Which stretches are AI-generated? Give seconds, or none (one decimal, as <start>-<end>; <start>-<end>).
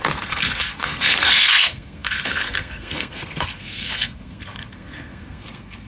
0.0-5.9